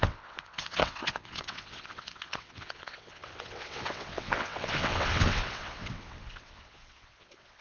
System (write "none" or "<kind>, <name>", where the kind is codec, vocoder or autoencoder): vocoder, WaveNeXt